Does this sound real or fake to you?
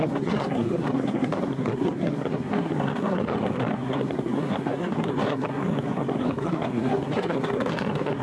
fake